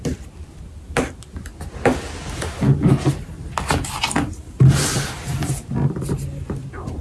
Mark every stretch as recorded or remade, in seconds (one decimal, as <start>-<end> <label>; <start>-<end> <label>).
0.0-5.6 recorded; 5.6-7.0 remade